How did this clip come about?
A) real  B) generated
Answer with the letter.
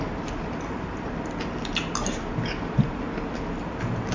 A